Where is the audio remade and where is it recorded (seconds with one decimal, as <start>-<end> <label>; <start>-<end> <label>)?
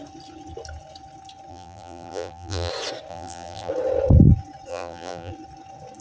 0.0-1.5 recorded; 1.5-2.7 remade; 2.7-3.1 recorded; 3.1-3.7 remade; 3.7-4.7 recorded; 4.7-5.3 remade; 5.3-6.0 recorded